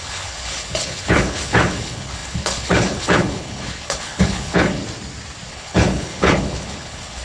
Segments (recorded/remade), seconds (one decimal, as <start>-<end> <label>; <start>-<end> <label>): 0.0-4.8 remade; 4.8-5.5 recorded; 5.5-7.2 remade